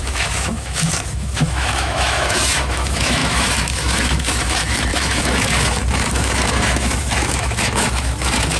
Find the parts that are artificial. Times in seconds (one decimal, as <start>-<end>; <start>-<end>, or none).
0.0-8.6